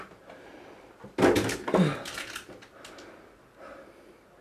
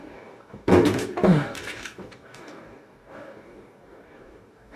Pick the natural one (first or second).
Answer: first